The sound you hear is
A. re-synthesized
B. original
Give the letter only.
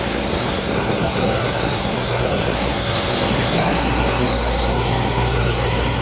A